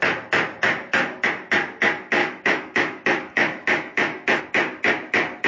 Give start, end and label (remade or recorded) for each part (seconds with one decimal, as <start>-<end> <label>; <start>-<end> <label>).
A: 0.0-2.2 recorded; 2.2-4.4 remade; 4.4-5.5 recorded